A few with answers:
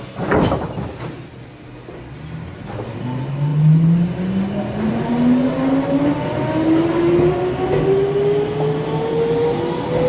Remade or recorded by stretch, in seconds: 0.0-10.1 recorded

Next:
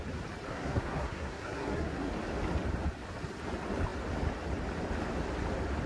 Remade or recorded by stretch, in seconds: 0.0-0.5 recorded; 0.5-2.1 remade; 2.1-5.9 recorded

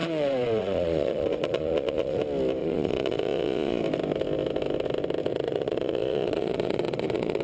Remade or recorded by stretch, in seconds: 0.0-2.2 remade; 2.2-2.6 recorded; 2.6-3.8 remade; 3.8-5.3 recorded; 5.3-7.4 remade